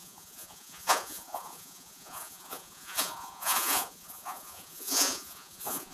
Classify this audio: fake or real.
fake